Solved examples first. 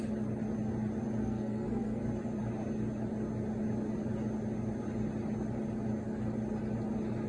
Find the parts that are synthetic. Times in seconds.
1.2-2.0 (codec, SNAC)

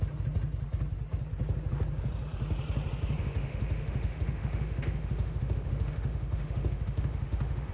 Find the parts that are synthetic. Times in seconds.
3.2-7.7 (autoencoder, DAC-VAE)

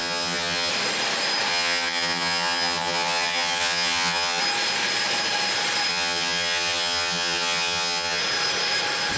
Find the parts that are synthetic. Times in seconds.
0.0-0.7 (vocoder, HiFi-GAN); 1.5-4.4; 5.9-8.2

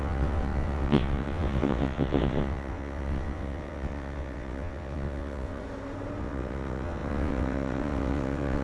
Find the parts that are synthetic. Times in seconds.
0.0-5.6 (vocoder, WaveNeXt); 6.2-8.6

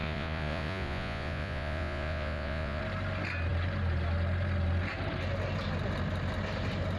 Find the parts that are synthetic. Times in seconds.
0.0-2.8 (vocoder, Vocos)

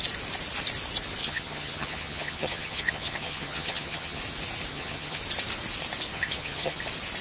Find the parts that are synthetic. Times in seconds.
1.2-4.2 (vocoder, HiFi-GAN); 4.7-5.2; 6.1-6.8